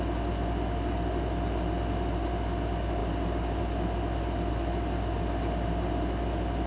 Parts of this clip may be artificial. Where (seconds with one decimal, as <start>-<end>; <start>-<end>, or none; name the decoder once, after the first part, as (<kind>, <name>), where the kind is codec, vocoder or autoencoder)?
none

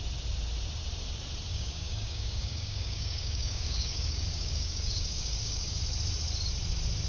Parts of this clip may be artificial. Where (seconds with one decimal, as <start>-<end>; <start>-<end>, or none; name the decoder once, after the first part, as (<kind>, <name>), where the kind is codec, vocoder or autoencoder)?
1.5-5.8 (codec, DAC)

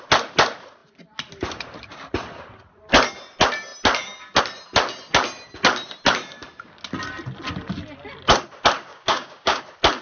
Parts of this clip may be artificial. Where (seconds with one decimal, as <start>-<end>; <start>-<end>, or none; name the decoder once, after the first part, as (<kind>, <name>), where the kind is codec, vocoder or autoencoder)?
8.9-9.6 (codec, DAC)

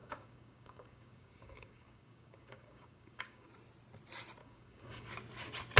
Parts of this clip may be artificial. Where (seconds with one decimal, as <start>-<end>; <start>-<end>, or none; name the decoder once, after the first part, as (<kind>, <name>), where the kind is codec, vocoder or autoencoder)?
0.0-3.5 (codec, DAC); 4.4-5.1